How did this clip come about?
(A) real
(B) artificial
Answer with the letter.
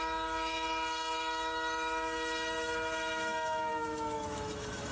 B